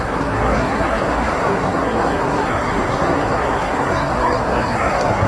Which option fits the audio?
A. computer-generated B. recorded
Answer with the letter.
A